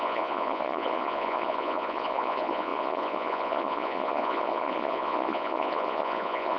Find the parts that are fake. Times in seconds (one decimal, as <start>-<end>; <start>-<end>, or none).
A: 0.0-6.6